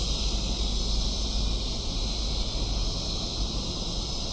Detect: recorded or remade recorded